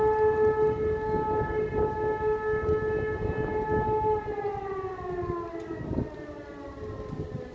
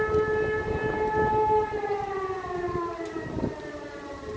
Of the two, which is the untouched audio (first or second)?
first